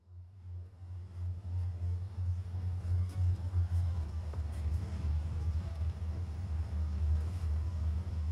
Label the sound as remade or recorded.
remade